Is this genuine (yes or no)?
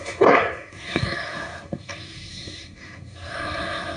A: no